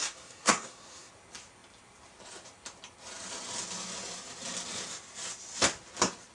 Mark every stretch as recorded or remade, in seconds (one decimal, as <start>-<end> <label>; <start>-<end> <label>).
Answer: 0.0-1.1 remade; 1.1-6.3 recorded